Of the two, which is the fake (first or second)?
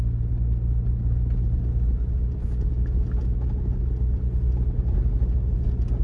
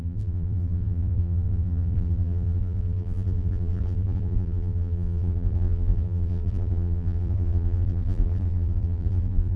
second